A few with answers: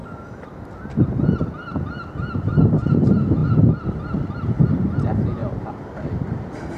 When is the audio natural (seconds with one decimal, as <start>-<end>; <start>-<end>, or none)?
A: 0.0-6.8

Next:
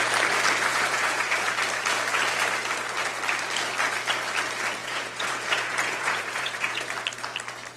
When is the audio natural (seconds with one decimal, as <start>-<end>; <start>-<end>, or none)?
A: 0.0-0.7; 1.5-4.8; 6.9-7.8

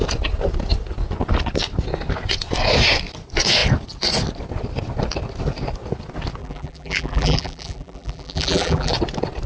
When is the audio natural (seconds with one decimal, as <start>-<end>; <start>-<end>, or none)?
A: 0.0-6.4; 8.9-9.5

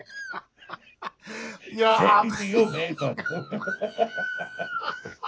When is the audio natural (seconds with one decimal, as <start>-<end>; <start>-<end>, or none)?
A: 0.0-1.9

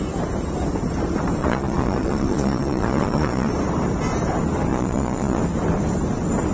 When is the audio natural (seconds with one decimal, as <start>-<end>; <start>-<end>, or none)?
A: 0.0-1.4; 3.5-4.7; 5.4-6.5